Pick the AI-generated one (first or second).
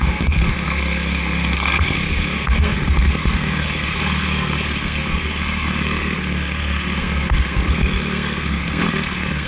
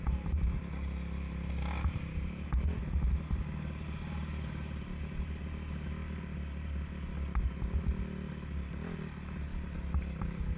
first